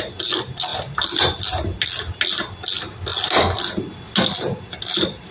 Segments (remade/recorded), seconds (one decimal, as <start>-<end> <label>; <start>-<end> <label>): 0.0-5.3 recorded